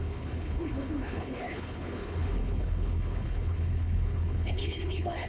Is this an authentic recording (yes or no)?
no